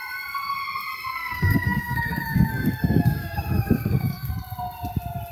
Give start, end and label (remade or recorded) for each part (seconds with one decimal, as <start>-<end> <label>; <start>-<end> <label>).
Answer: 0.0-1.1 recorded; 1.1-4.3 remade; 4.3-5.3 recorded